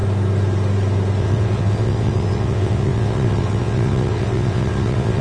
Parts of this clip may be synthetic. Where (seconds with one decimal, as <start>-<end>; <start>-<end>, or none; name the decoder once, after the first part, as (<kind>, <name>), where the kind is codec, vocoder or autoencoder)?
1.2-5.2 (vocoder, WaveNeXt)